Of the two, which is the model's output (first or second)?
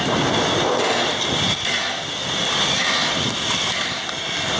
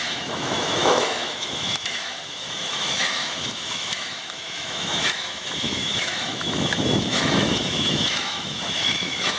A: second